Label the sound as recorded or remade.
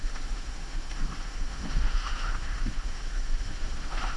remade